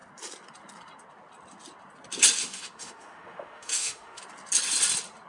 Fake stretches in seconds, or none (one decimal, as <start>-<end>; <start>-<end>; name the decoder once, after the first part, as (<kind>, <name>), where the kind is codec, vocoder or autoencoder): 2.4-4.2 (autoencoder, DAC-VAE)